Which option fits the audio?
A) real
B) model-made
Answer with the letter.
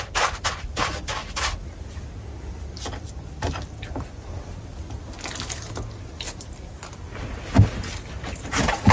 A